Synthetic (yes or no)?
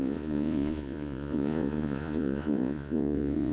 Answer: yes